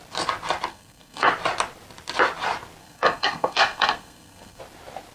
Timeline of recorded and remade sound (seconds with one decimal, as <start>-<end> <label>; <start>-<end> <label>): 0.0-0.7 recorded; 0.7-1.3 remade; 1.3-2.8 recorded; 2.8-4.6 remade; 4.6-5.1 recorded